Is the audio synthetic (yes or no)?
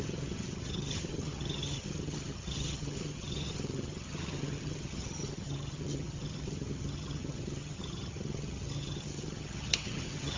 yes